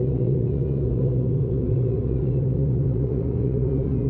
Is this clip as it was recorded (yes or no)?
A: no